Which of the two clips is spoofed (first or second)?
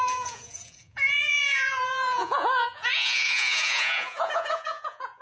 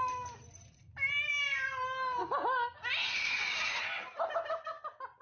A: first